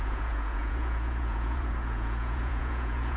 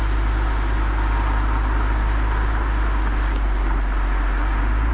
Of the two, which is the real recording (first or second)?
second